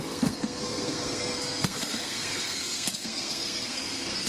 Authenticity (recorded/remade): remade